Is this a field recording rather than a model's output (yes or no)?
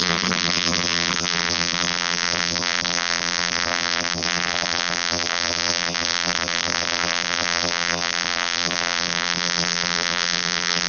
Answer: no